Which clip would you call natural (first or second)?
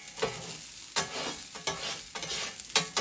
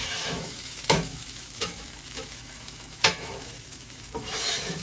first